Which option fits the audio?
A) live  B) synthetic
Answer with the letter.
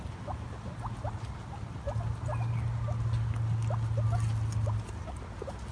A